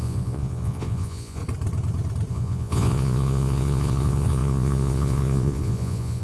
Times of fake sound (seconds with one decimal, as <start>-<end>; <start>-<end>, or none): 0.0-1.4; 2.3-6.2